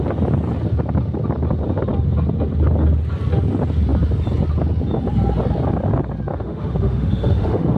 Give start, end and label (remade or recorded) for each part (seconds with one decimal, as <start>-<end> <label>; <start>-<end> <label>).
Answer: 0.0-6.3 recorded; 6.3-7.8 remade